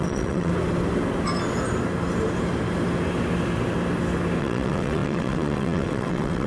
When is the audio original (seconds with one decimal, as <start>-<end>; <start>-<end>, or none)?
0.5-4.4

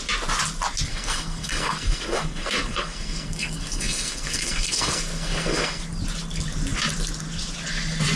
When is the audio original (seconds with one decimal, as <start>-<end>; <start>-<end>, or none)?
0.0-0.9; 5.8-8.2

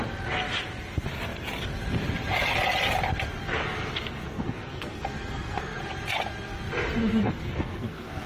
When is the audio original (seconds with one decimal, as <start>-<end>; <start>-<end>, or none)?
0.0-3.6; 5.8-7.0

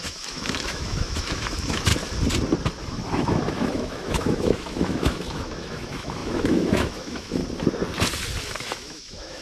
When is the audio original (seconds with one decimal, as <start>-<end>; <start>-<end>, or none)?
1.9-2.8; 7.4-8.6